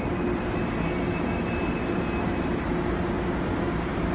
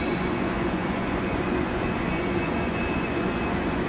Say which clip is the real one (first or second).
first